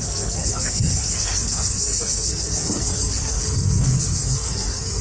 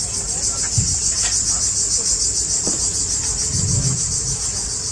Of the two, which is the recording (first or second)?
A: second